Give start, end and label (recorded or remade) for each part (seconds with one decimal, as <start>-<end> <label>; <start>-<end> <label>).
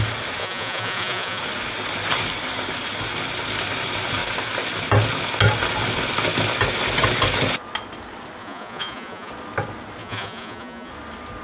0.0-0.4 recorded; 0.4-1.4 remade; 1.4-8.4 recorded; 8.4-9.3 remade; 9.3-10.0 recorded; 10.0-10.9 remade; 10.9-11.4 recorded